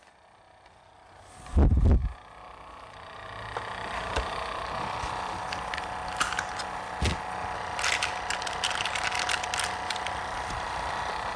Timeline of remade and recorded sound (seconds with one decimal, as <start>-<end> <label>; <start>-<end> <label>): 0.0-10.3 recorded; 10.3-10.9 remade; 10.9-11.4 recorded